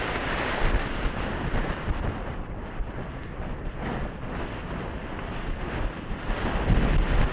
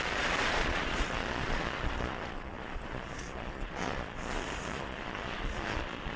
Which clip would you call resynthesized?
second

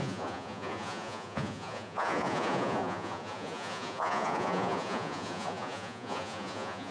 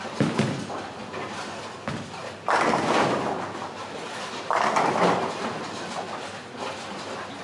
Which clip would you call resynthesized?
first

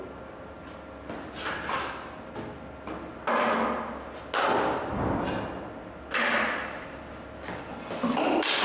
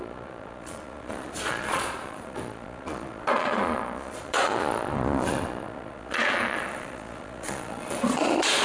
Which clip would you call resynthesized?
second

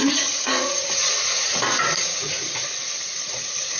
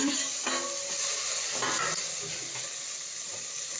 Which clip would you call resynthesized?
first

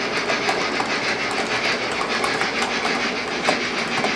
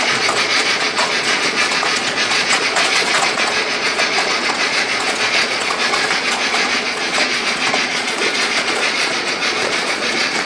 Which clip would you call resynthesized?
second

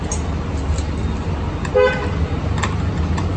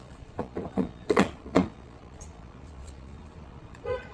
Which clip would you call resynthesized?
second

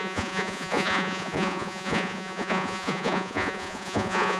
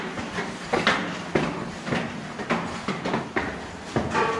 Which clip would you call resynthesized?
first